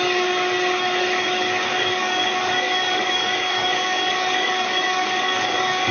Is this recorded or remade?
remade